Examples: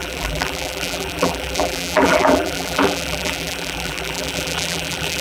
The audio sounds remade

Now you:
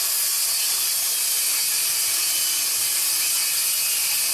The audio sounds recorded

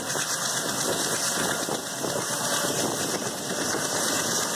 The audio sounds recorded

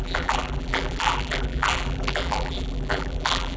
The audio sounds remade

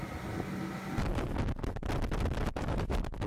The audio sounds recorded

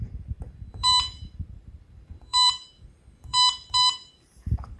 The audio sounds remade